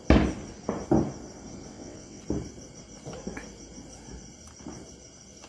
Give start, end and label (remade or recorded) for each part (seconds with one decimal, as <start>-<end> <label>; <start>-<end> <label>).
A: 0.0-1.7 recorded; 1.7-2.2 remade; 2.2-5.5 recorded